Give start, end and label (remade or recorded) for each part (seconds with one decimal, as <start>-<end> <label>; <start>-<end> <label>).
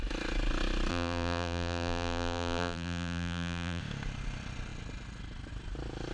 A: 0.0-0.9 recorded; 0.9-3.8 remade; 3.8-6.1 recorded